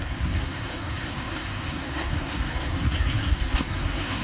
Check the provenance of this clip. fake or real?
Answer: fake